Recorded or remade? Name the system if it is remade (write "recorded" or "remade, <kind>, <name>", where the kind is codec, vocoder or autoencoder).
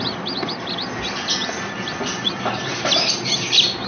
recorded